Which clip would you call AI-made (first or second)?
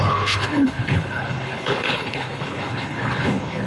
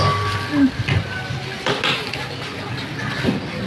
first